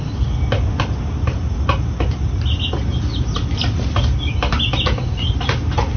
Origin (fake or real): real